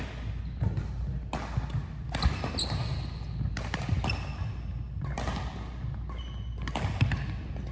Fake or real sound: real